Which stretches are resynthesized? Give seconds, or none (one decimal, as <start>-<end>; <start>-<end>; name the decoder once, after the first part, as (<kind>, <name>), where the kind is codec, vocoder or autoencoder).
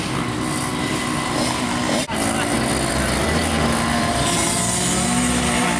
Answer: none